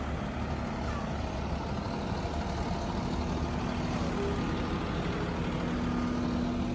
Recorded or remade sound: recorded